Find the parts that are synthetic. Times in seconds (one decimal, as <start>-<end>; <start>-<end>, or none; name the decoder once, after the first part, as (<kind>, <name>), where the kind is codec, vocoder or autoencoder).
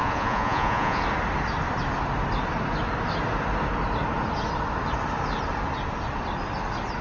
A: 0.0-1.0 (vocoder, Vocos)